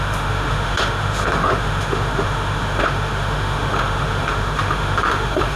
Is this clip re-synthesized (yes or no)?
yes